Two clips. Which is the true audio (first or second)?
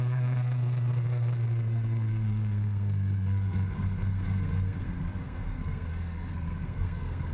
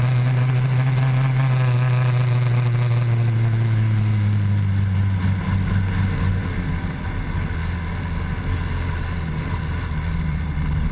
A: second